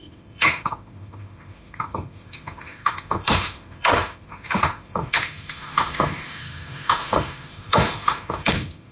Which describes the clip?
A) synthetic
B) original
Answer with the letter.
A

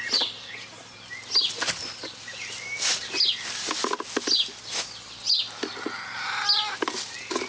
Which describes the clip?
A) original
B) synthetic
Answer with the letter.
A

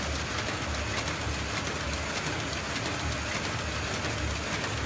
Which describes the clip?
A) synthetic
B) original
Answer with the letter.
B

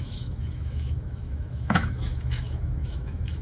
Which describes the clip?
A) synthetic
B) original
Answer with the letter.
A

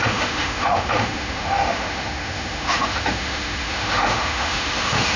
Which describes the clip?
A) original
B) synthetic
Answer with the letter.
B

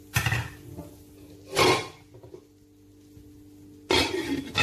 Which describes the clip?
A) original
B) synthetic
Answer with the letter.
A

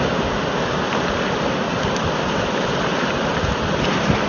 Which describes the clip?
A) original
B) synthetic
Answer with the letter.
A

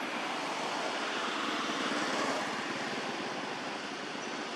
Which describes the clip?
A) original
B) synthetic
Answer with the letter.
A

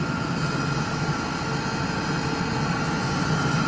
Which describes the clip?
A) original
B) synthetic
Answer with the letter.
A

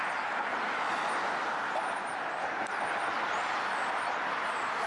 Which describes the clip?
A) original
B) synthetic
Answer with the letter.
A